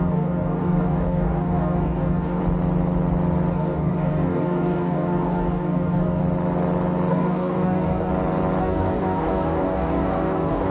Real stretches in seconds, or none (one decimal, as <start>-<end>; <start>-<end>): 2.4-3.5; 6.2-7.1; 8.1-8.6